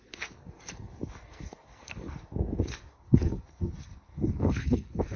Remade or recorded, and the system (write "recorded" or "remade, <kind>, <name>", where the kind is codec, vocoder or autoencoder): remade, codec, SNAC